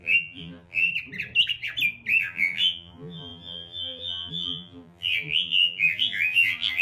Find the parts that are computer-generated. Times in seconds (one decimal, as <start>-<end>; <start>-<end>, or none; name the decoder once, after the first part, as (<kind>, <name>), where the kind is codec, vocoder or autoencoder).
0.0-0.9 (vocoder, BigVGAN v2); 2.2-6.8